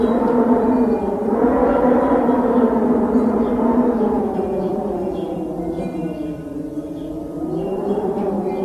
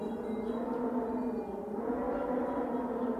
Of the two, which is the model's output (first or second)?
first